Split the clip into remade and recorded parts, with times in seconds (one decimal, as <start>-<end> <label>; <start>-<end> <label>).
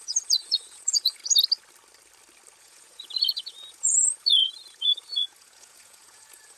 0.0-1.2 remade; 1.2-2.6 recorded; 2.6-6.6 remade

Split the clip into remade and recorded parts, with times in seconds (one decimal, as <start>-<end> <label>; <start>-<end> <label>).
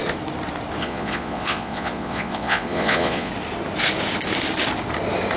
0.0-0.8 recorded; 0.8-3.3 remade; 3.3-5.4 recorded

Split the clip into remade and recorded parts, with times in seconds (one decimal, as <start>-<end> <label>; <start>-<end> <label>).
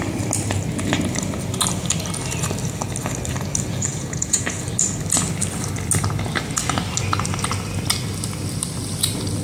0.0-3.9 recorded; 3.9-4.6 remade; 4.6-9.4 recorded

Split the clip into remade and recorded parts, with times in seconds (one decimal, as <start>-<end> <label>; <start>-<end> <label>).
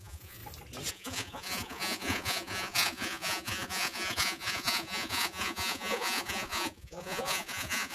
0.0-0.4 remade; 0.4-0.9 recorded; 0.9-7.9 remade